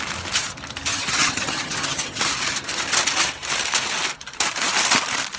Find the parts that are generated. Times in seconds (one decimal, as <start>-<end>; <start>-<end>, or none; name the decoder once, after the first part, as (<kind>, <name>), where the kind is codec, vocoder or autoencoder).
0.9-2.2 (vocoder, HiFi-GAN)